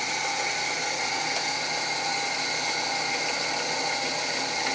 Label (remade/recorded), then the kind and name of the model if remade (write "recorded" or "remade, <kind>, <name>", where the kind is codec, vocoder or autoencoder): recorded